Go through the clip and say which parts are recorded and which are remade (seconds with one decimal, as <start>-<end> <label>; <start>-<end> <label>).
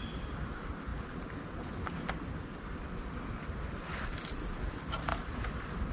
0.0-5.9 recorded